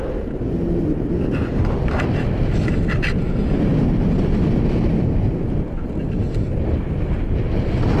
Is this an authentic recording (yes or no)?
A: yes